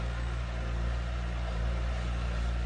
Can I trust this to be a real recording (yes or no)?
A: yes